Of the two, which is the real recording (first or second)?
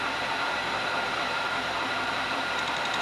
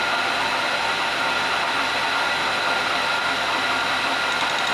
second